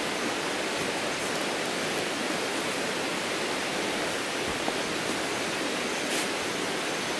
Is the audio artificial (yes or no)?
no